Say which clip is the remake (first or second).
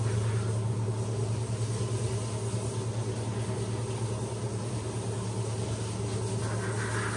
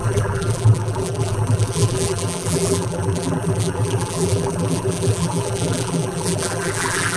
second